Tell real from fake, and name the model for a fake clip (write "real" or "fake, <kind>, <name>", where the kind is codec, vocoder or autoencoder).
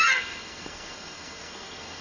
fake, codec, SNAC